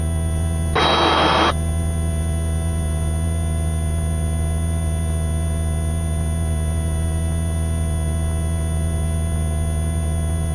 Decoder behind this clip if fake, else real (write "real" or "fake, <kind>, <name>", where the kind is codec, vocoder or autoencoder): real